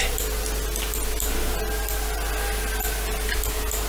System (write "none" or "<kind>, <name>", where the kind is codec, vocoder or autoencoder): none